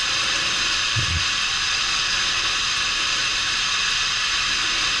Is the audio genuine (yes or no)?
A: yes